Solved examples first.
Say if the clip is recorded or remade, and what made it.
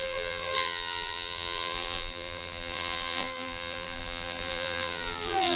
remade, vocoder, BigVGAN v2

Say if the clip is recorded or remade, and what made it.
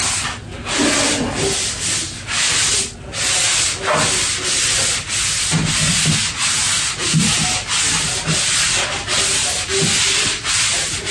recorded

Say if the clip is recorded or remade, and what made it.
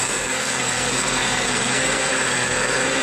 remade, codec, SNAC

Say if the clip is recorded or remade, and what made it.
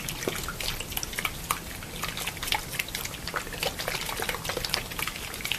recorded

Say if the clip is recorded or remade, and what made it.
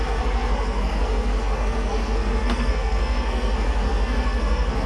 remade, codec, SNAC